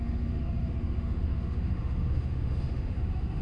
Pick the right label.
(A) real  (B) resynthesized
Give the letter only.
B